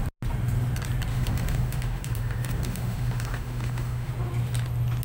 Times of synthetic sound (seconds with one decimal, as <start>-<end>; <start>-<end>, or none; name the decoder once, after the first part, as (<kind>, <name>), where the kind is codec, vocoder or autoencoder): 1.1-4.1 (autoencoder, DAC-VAE)